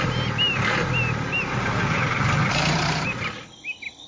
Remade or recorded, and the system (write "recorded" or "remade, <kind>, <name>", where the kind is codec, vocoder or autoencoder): recorded